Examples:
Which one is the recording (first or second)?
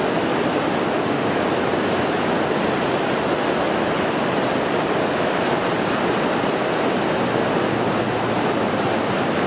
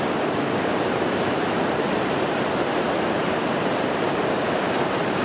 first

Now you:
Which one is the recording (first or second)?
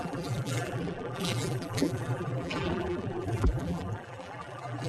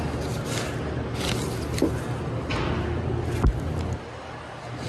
second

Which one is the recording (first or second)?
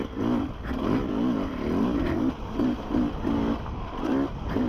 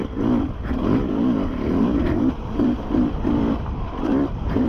first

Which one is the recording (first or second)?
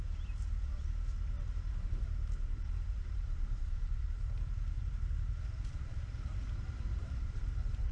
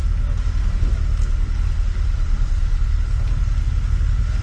second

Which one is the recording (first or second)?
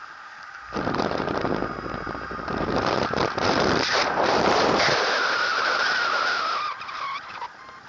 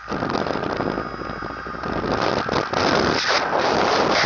second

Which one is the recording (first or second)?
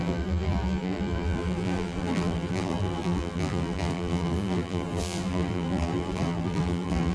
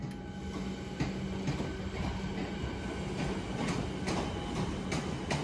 second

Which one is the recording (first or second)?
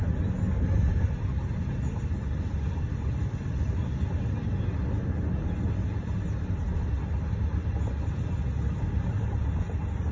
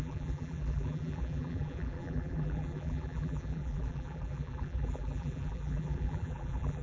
first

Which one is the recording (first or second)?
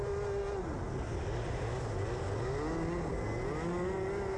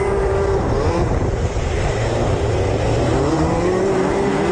first